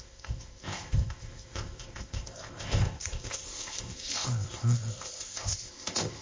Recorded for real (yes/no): no